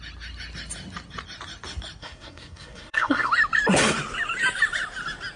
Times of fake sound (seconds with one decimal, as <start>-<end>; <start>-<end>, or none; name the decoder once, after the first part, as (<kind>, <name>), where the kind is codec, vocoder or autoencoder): 2.0-3.3 (codec, SNAC)